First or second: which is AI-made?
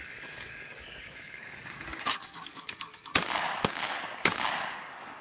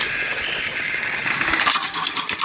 first